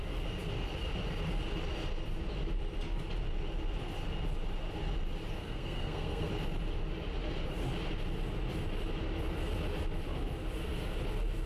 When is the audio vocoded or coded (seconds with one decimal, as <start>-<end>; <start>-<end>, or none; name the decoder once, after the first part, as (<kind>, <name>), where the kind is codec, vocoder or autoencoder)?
5.4-6.3 (codec, SNAC)